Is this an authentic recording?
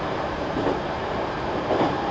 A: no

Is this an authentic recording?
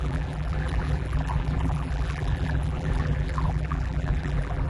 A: no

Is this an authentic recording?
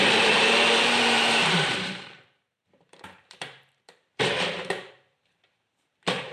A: no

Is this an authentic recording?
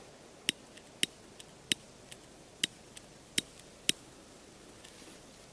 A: yes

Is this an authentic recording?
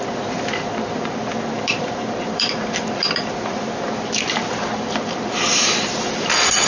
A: no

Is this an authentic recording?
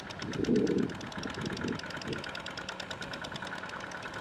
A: yes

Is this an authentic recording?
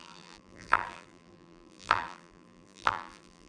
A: no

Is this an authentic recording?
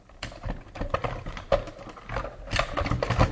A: yes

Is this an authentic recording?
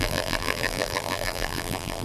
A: no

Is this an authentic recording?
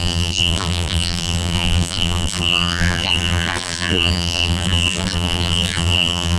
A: no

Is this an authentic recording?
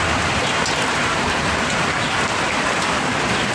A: no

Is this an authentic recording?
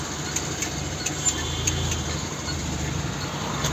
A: yes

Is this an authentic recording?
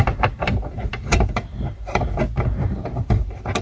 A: no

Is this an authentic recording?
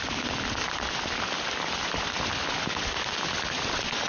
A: no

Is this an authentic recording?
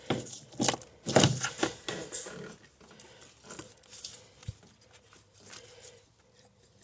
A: yes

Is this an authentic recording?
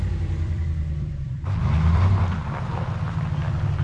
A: no